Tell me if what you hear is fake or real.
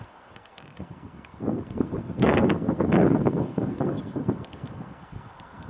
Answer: fake